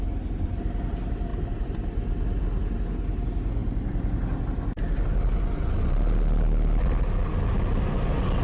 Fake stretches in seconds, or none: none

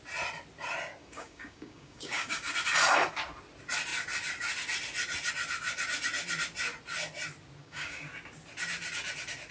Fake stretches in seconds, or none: 1.0-2.5 (codec, DAC); 7.6-8.1

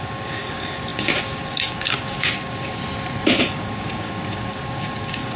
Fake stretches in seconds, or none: 0.0-2.8 (codec, DAC); 3.4-5.4

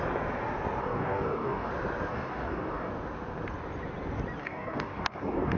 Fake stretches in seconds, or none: 0.8-1.7 (codec, DAC); 2.1-2.9; 4.4-5.6

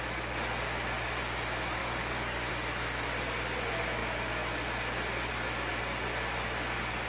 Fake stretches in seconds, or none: 1.8-2.5 (codec, DAC)

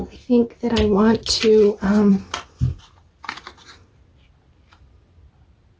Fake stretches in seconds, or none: none